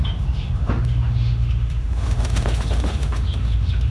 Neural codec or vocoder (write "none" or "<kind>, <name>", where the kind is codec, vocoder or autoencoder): autoencoder, DAC-VAE